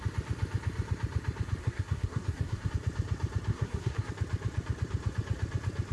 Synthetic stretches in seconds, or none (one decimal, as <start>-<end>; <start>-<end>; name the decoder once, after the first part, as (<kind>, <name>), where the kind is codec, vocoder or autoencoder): 1.6-2.7 (codec, SNAC); 3.5-4.1